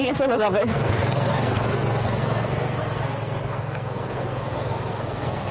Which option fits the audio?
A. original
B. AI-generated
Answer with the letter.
B